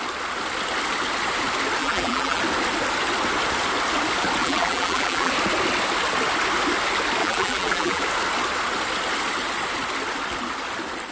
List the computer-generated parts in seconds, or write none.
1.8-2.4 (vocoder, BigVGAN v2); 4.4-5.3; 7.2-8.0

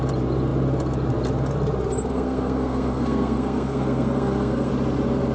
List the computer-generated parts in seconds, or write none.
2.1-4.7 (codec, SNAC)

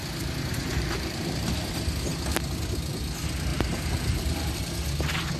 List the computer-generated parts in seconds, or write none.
0.0-1.7 (vocoder, BigVGAN v2); 3.5-4.5